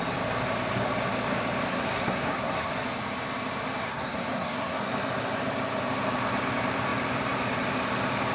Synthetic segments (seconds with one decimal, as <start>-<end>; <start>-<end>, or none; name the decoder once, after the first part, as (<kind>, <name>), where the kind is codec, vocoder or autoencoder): 1.7-2.7 (codec, SNAC); 3.8-4.8